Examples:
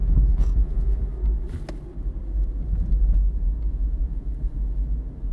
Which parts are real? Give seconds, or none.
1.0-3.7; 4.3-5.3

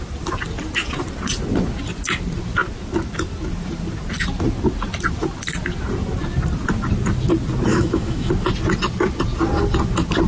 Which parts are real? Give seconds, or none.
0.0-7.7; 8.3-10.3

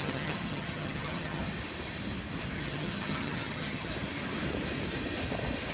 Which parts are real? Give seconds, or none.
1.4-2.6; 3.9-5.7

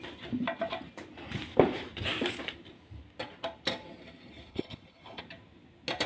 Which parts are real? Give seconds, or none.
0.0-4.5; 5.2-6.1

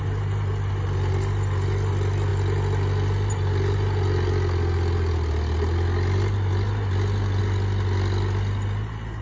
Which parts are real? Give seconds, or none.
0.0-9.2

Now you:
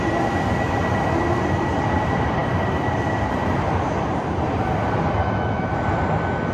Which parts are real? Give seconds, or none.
0.0-5.2; 5.7-6.5

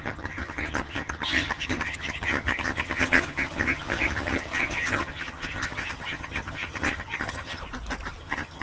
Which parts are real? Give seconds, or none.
7.6-8.2